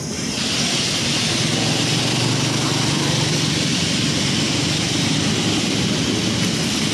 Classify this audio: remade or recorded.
recorded